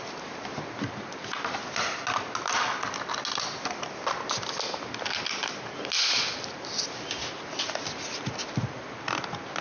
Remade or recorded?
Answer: recorded